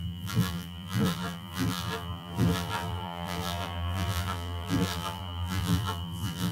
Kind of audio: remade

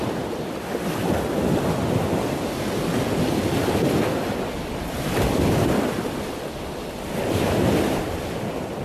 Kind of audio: recorded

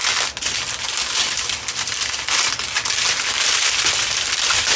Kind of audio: recorded